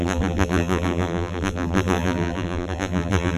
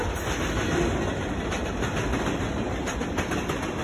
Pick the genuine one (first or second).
second